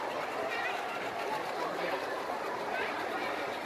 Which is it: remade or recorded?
recorded